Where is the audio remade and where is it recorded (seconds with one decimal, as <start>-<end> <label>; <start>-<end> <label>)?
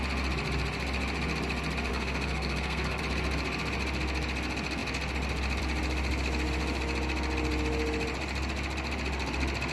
0.0-1.9 recorded; 1.9-3.0 remade; 3.0-9.7 recorded